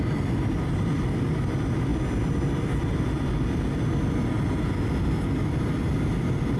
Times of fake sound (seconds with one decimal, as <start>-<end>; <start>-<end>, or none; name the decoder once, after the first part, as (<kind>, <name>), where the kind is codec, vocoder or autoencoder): none